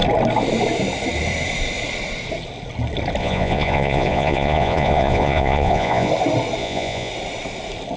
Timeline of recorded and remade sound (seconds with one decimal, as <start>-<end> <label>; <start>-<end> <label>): 0.0-3.2 recorded; 3.2-6.1 remade; 6.1-6.6 recorded; 6.6-7.1 remade; 7.1-8.0 recorded